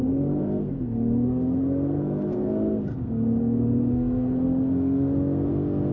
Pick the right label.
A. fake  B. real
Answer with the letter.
A